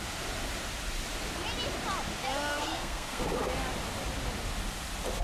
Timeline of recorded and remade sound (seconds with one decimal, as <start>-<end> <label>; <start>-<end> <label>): 0.0-2.5 recorded; 2.5-3.2 remade; 3.2-5.2 recorded